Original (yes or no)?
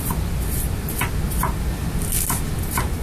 yes